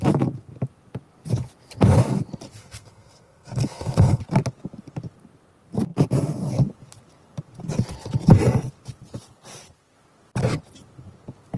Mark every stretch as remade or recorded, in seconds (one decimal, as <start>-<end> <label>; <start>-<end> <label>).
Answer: 0.0-2.6 recorded; 2.6-4.2 remade; 4.2-11.6 recorded